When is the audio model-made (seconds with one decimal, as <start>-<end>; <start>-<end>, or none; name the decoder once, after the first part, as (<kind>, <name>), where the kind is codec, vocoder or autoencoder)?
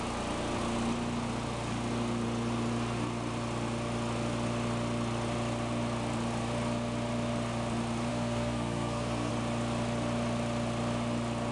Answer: 8.1-9.3 (codec, SNAC)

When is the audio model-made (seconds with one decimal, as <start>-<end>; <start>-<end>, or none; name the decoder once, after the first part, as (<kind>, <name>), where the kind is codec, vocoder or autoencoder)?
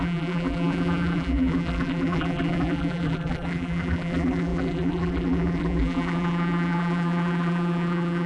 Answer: 0.0-8.3 (vocoder, BigVGAN v2)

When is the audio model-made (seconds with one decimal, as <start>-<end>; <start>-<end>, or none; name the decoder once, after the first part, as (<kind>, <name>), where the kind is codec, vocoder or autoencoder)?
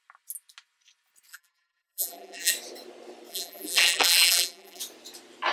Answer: 1.3-2.5 (vocoder, BigVGAN v2); 3.3-4.8